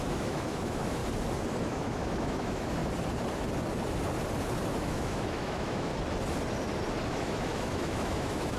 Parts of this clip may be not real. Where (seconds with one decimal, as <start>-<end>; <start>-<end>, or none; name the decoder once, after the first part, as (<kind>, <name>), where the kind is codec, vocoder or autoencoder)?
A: 0.0-1.0 (autoencoder, DAC-VAE); 1.6-2.8; 4.8-5.9; 7.1-8.6